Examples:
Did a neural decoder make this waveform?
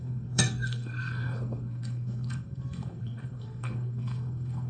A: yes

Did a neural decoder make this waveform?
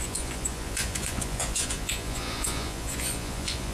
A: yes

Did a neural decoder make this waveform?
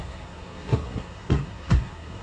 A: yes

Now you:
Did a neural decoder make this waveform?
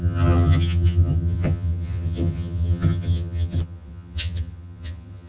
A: yes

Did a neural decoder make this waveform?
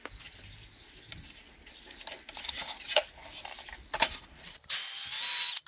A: no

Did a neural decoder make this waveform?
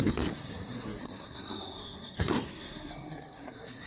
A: yes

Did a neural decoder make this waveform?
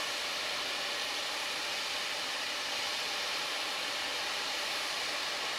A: yes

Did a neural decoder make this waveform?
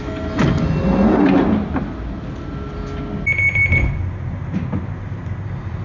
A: no